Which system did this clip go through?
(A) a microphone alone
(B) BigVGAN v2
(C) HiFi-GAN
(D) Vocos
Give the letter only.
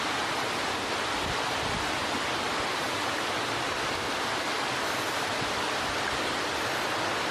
A